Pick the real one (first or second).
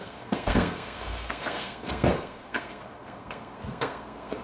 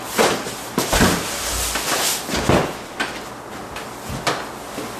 second